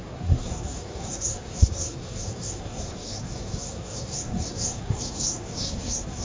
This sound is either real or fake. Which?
fake